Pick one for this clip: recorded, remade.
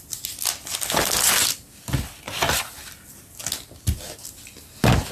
recorded